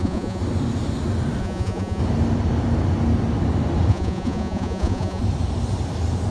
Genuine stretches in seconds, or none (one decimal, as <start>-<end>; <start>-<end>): 0.4-1.4; 2.0-3.9; 5.2-6.3